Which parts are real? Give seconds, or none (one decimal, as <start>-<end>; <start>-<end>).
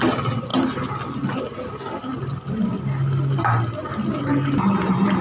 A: 0.0-5.2